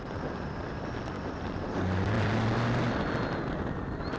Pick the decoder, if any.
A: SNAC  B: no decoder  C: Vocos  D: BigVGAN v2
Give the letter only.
B